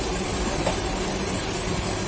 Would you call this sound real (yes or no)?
yes